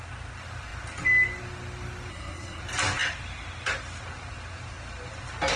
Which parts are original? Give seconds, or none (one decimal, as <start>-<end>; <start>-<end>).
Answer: 0.0-2.1; 2.6-5.6